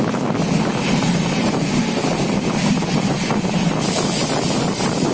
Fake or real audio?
real